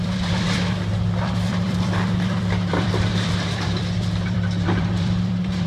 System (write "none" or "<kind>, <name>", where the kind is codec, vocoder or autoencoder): vocoder, BigVGAN v2